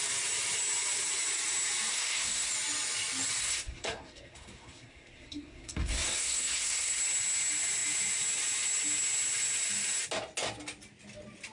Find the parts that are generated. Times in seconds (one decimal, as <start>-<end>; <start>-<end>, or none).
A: 1.9-2.5; 3.4-7.0